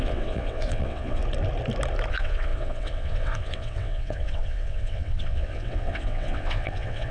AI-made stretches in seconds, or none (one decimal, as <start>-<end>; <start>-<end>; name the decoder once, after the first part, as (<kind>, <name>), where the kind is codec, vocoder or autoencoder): 0.0-1.2 (vocoder, WaveNeXt); 2.1-7.1